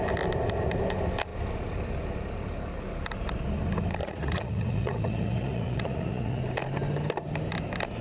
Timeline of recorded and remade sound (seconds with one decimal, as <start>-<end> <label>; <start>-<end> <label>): 0.0-4.0 recorded; 4.0-6.4 remade; 6.4-8.0 recorded